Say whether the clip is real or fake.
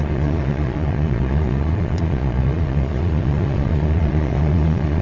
fake